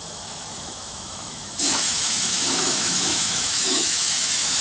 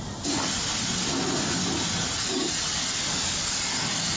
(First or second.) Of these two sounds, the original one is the second